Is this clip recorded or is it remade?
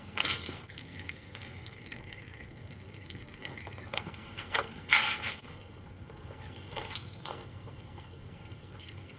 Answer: remade